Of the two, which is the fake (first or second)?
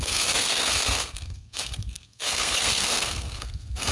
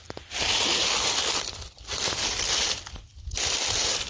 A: first